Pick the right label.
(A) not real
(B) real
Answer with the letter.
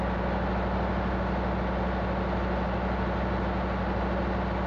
B